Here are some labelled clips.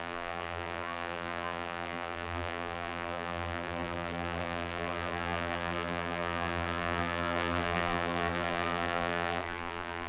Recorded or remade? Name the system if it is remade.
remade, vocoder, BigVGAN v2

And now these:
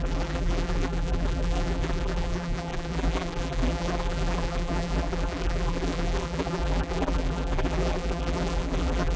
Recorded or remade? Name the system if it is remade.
remade, vocoder, BigVGAN v2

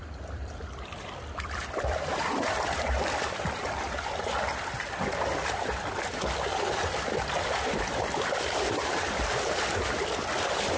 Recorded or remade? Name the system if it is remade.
remade, vocoder, BigVGAN v2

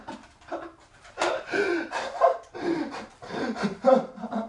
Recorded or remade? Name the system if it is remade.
remade, vocoder, BigVGAN v2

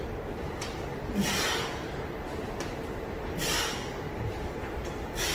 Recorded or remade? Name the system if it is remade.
remade, vocoder, BigVGAN v2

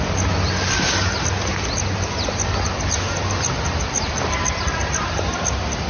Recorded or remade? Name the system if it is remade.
recorded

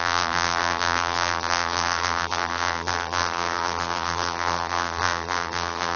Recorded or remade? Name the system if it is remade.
remade, vocoder, BigVGAN v2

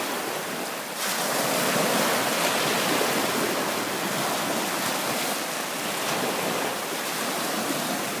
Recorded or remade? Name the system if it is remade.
recorded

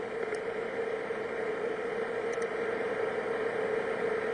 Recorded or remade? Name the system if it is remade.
remade, vocoder, BigVGAN v2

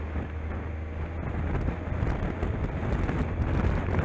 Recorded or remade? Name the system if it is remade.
recorded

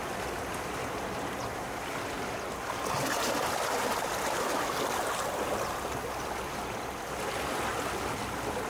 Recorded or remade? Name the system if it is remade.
recorded